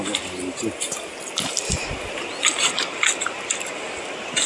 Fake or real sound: real